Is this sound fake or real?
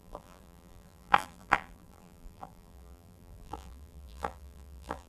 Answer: fake